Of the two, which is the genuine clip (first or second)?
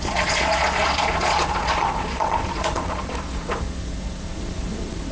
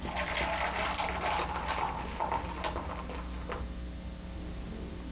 second